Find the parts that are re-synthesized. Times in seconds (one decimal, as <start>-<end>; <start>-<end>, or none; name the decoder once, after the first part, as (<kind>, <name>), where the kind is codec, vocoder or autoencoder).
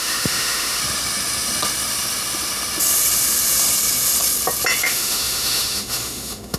0.0-0.8 (autoencoder, DAC-VAE); 4.8-6.6